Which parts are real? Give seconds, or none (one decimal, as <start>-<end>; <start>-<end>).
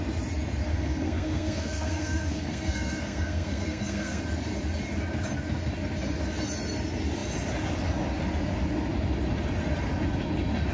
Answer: 0.0-0.7; 4.2-10.7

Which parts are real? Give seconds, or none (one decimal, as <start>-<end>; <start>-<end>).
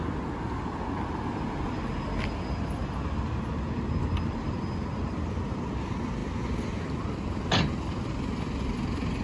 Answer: 0.0-9.2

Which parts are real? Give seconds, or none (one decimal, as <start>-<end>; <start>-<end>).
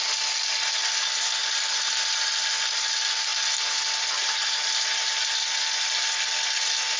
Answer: 0.0-7.0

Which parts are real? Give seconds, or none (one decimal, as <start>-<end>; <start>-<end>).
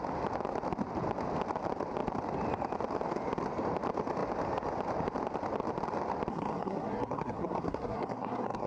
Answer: 0.0-6.3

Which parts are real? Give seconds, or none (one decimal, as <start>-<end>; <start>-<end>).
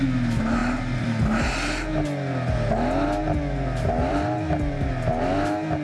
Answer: 0.0-5.8